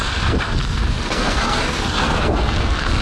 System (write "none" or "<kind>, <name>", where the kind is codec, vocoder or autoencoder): codec, SNAC